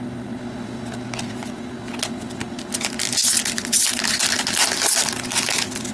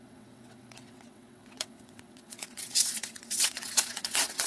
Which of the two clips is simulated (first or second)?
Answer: second